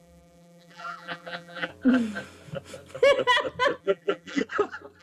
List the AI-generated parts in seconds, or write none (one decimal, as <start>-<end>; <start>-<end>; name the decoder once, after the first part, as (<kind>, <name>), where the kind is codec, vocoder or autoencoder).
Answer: 0.0-1.7 (vocoder, BigVGAN v2); 3.8-4.4